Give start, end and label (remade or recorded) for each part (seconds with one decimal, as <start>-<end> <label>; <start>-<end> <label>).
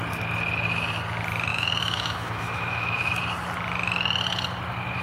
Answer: 0.0-1.5 recorded; 1.5-3.1 remade; 3.1-5.0 recorded